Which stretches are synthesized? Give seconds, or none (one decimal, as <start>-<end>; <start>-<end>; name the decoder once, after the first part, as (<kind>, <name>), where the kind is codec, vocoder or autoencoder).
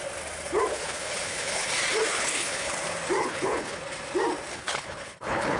0.7-1.7 (codec, HILCodec); 2.1-2.7; 3.2-3.8; 4.5-5.6